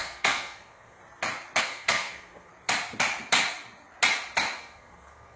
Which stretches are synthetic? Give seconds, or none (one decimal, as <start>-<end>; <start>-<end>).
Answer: 0.0-1.0; 1.6-2.5; 4.6-5.4